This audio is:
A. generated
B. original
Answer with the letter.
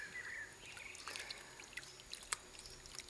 B